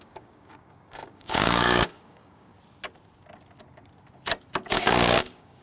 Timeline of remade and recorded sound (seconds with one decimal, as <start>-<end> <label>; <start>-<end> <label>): 0.0-2.5 remade; 2.5-4.7 recorded; 4.7-5.6 remade